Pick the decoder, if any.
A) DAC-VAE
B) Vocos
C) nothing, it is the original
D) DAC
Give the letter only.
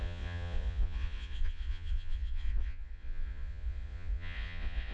B